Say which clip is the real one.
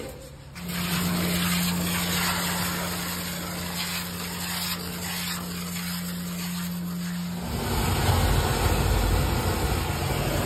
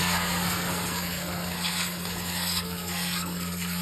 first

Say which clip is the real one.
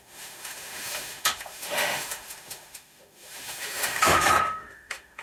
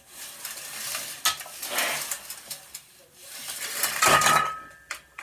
second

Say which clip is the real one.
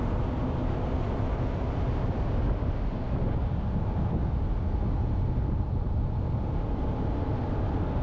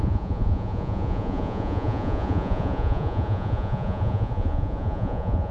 first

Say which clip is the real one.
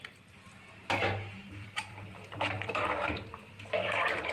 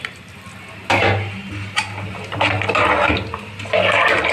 second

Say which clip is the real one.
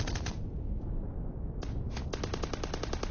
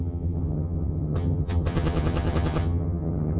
first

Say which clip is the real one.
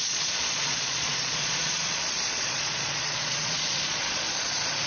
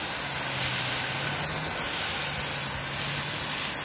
second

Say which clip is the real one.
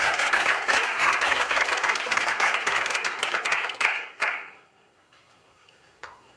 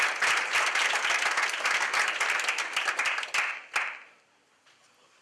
second